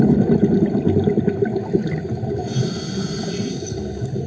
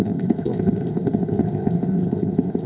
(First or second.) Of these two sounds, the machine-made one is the second